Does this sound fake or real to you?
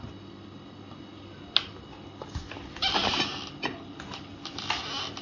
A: real